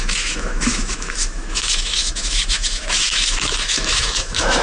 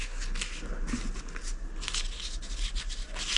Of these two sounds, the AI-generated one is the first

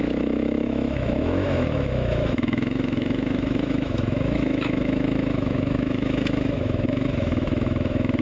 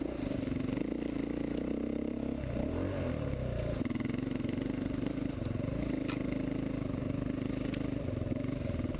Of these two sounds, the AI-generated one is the first